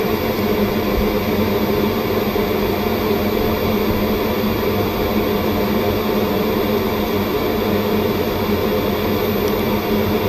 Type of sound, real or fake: real